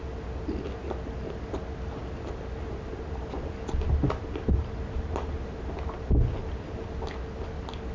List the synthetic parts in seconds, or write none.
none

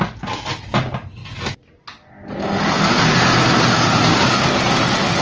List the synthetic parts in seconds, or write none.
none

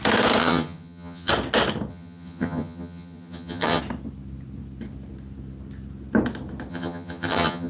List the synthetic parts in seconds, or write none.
0.4-1.3; 1.9-3.8; 6.7-7.7